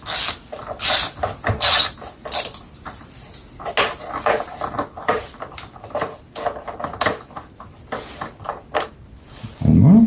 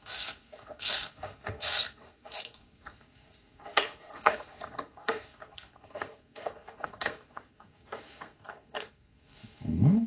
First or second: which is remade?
second